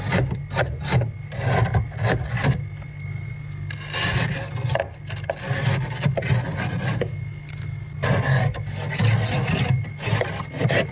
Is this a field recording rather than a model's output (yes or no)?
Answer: yes